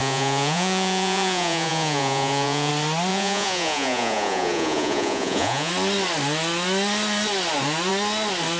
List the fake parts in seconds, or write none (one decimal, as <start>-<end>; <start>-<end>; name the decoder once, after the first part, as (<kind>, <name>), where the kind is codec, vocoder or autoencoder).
0.0-2.7 (vocoder, Vocos); 3.1-5.7